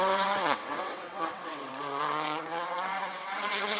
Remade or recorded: remade